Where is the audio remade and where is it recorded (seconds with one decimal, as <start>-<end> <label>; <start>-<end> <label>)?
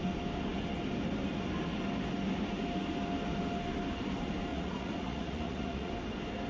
0.0-4.5 recorded; 4.5-5.9 remade; 5.9-6.5 recorded